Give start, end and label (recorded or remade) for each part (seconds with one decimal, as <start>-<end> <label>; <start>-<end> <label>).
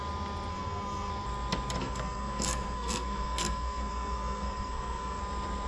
0.0-0.5 recorded; 0.5-1.1 remade; 1.1-1.8 recorded; 1.8-5.2 remade; 5.2-5.7 recorded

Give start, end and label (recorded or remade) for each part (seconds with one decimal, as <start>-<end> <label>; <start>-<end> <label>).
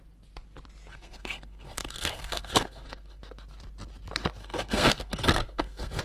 0.0-0.9 recorded; 0.9-3.2 remade; 3.2-4.4 recorded; 4.4-6.0 remade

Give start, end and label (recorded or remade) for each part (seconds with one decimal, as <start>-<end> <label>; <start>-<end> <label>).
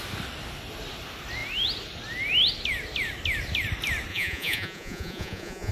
0.0-4.1 recorded; 4.1-5.7 remade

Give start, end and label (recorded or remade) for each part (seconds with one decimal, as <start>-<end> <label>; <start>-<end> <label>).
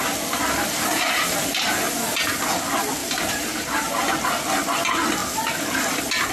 0.0-0.9 recorded; 0.9-1.8 remade; 1.8-3.0 recorded; 3.0-3.9 remade; 3.9-6.3 recorded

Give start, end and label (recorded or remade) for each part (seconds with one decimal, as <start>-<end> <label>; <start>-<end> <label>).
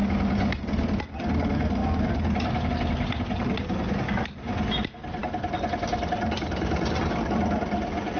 0.0-8.2 recorded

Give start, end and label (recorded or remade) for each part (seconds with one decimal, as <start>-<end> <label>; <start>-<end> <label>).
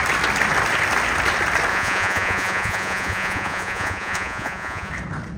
0.0-1.7 recorded; 1.7-4.9 remade; 4.9-5.4 recorded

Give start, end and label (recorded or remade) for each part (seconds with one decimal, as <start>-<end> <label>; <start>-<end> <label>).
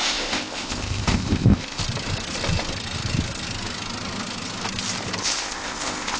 0.0-1.8 remade; 1.8-5.2 recorded; 5.2-6.2 remade